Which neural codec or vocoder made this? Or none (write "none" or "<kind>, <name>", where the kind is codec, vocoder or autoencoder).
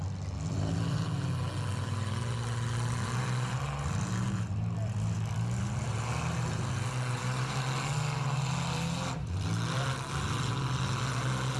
none